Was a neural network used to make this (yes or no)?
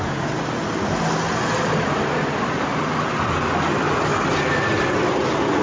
no